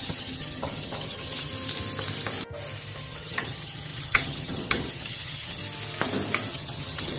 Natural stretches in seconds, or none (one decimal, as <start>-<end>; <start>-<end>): 1.5-3.0; 5.6-6.5